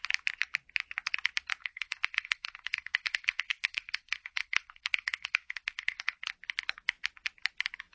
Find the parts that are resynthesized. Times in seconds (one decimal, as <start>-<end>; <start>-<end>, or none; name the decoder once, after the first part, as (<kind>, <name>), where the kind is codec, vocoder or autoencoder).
1.6-6.3 (codec, SNAC)